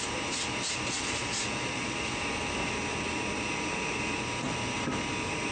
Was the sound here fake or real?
real